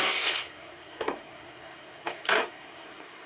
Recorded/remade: remade